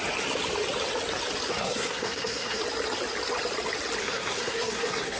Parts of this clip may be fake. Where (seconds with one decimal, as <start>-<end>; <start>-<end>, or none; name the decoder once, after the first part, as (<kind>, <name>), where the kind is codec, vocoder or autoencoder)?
1.5-2.6 (codec, SNAC); 4.0-5.2